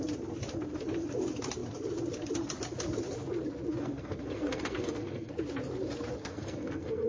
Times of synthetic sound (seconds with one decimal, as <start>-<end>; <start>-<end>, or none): 3.8-5.3; 6.2-7.1